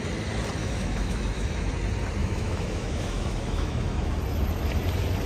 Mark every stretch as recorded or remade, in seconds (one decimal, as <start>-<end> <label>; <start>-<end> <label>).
0.0-0.6 recorded; 0.6-1.7 remade; 1.7-2.2 recorded; 2.2-4.1 remade; 4.1-5.3 recorded